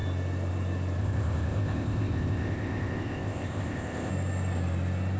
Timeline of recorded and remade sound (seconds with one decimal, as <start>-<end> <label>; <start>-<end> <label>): 0.0-1.0 recorded; 1.0-4.1 remade; 4.1-5.2 recorded